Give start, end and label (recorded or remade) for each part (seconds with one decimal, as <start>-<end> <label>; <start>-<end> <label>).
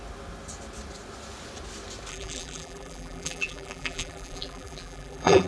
0.0-2.1 recorded; 2.1-5.5 remade